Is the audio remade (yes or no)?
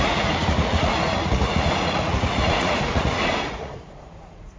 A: yes